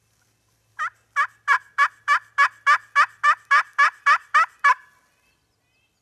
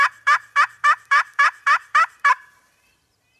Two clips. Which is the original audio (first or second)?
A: first